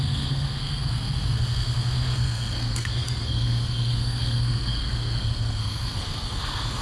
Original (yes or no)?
no